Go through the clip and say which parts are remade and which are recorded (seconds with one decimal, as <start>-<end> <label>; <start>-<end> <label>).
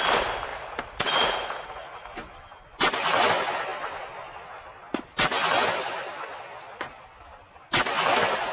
0.0-0.5 recorded; 0.5-2.0 remade; 2.0-8.5 recorded